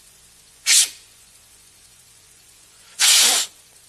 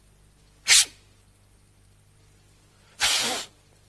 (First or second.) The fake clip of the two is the first